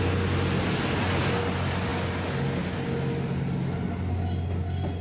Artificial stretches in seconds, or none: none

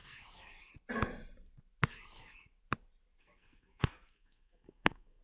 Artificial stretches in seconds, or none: 0.0-0.7; 1.9-2.5; 3.2-5.2